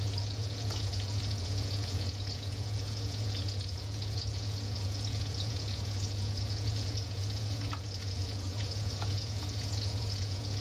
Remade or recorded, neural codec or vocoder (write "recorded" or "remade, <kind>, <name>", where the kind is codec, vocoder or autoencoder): remade, vocoder, Vocos